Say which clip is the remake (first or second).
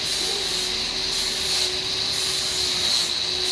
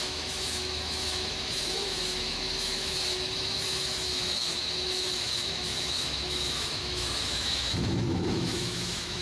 second